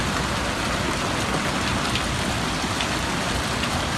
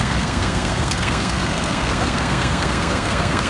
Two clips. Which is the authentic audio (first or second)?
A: first